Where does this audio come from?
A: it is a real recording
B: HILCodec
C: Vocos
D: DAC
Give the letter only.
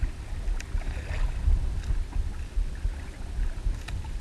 A